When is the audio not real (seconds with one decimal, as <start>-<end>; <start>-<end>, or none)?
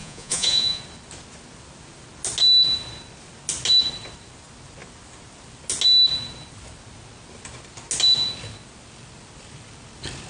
0.0-0.8